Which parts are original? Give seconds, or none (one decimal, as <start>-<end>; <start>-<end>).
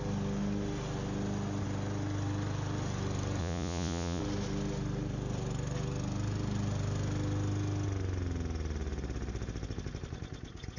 0.0-3.4; 4.2-10.8